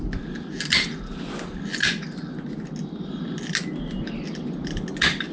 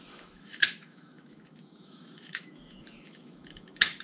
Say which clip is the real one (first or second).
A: first